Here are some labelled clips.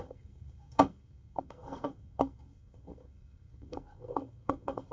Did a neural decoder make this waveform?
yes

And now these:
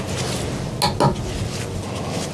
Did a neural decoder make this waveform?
no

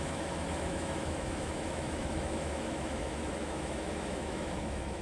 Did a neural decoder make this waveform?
yes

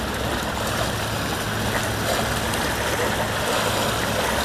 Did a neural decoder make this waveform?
no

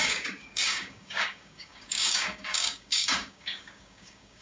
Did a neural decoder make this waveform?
yes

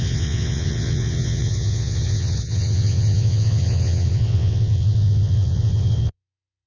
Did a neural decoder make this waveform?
yes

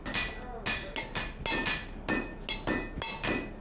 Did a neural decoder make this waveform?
no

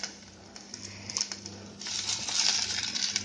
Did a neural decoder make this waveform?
yes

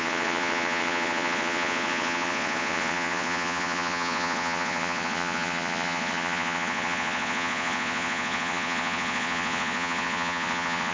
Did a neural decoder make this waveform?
yes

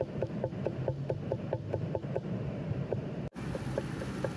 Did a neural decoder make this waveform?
no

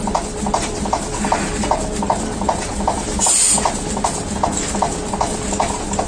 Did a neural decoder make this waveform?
no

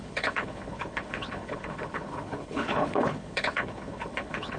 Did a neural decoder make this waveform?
yes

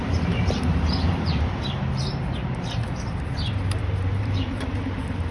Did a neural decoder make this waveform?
yes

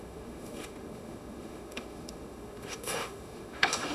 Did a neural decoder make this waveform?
yes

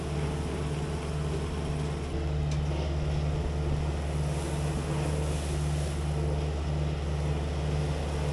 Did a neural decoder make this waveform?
no